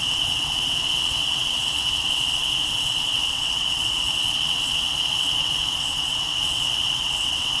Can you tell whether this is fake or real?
fake